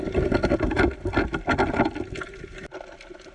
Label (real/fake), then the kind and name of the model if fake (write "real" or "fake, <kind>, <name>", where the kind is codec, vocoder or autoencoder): real